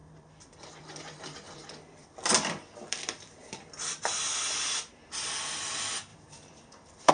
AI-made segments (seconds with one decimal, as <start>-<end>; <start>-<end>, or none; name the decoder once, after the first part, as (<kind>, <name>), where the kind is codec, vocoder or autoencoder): 0.0-4.3 (vocoder, BigVGAN v2); 6.1-7.1